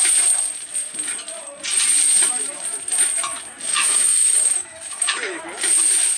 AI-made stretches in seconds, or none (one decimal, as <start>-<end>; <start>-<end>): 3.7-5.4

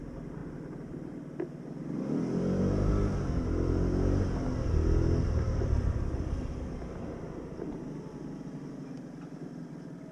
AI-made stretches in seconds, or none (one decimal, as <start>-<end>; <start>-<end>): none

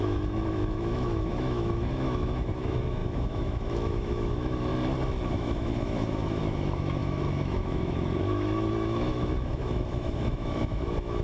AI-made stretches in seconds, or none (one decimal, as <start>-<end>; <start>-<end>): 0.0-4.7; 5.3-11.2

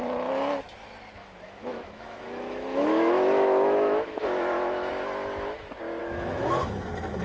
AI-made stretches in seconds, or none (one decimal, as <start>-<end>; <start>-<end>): 1.2-4.9; 6.0-7.2